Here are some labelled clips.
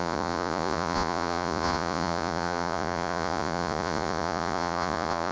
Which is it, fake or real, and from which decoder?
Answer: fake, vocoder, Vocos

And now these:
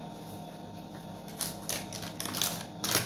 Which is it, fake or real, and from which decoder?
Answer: real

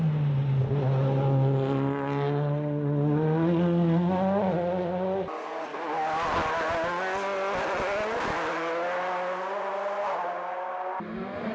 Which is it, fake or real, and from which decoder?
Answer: real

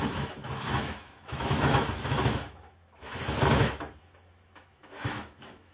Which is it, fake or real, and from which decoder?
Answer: fake, autoencoder, DAC-VAE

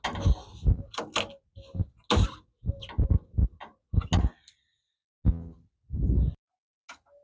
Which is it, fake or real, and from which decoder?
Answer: real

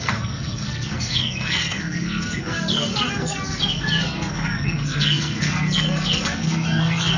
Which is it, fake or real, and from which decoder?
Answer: fake, codec, SNAC